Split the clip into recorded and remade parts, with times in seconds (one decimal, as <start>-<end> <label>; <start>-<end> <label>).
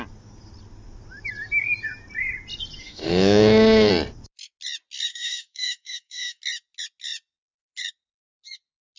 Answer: 0.0-2.8 recorded; 2.8-3.9 remade; 3.9-5.1 recorded; 5.1-6.4 remade; 6.4-9.0 recorded